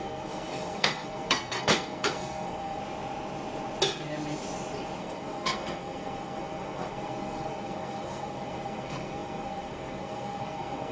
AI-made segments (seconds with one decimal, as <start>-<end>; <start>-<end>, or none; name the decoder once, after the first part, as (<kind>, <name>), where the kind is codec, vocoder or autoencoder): 0.0-2.8 (codec, SNAC); 5.0-10.9